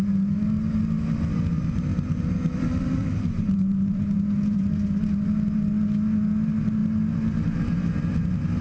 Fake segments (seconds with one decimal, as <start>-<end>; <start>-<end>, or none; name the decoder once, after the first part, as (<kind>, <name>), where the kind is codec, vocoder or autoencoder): 1.9-4.7 (vocoder, BigVGAN v2)